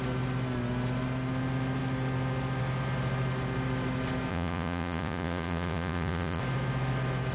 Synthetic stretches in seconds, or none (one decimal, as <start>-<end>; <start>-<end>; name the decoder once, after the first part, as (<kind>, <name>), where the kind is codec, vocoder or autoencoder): 4.3-6.4 (vocoder, Vocos)